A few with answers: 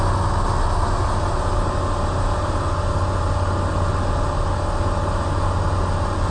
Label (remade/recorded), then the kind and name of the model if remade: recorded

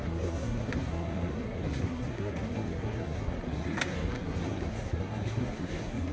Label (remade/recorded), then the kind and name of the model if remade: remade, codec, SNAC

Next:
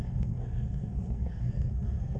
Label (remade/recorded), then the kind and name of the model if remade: remade, codec, SNAC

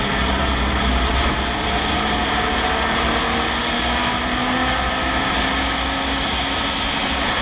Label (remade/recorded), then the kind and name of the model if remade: recorded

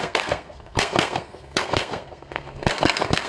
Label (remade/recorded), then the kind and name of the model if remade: remade, codec, SNAC